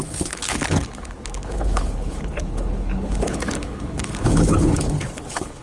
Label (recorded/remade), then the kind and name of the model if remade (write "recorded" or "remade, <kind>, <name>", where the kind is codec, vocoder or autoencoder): remade, codec, HILCodec